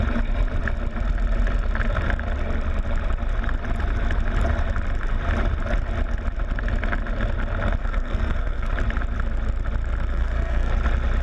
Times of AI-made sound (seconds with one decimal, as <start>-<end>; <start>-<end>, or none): 7.8-8.7; 10.1-10.7